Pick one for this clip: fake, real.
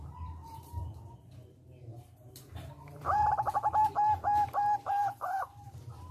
fake